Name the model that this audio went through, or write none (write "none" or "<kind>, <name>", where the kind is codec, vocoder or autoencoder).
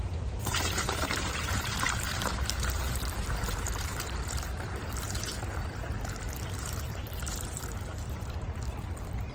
vocoder, BigVGAN v2